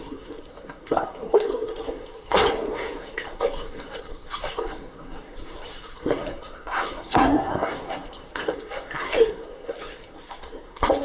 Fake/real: fake